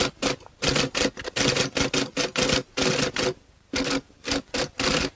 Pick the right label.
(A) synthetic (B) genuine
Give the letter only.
B